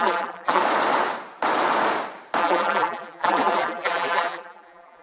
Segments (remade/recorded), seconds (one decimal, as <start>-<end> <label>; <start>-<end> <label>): 0.0-0.6 remade; 0.6-2.4 recorded; 2.4-5.0 remade